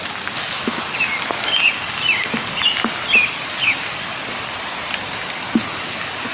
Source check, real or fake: real